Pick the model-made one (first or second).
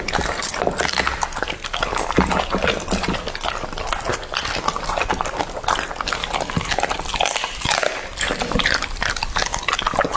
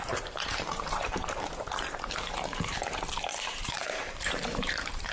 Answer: second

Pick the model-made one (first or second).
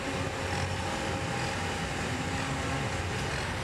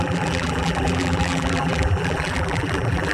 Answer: second